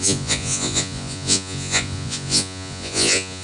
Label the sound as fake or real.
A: fake